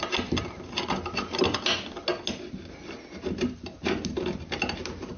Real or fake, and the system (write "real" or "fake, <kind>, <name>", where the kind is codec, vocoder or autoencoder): real